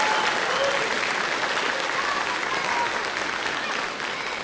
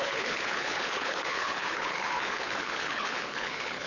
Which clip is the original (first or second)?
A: first